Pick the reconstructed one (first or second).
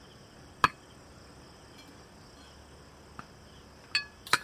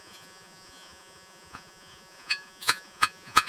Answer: second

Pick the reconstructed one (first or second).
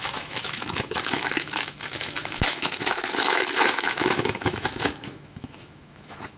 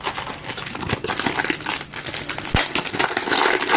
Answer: first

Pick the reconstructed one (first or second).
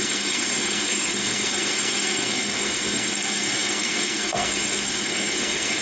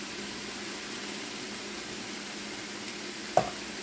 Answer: first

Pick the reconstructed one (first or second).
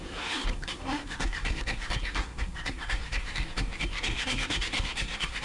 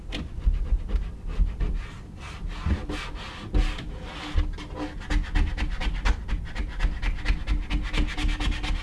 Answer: first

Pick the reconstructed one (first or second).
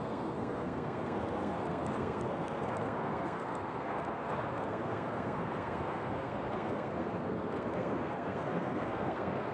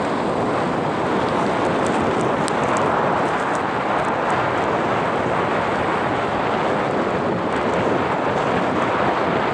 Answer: first